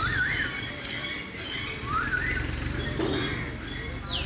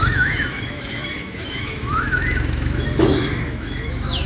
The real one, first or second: first